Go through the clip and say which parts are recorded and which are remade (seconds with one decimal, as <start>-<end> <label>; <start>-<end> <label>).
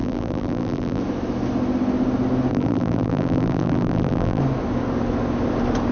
0.0-1.0 remade; 1.0-2.5 recorded; 2.5-4.4 remade; 4.4-5.9 recorded